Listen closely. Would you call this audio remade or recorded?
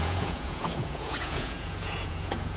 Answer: remade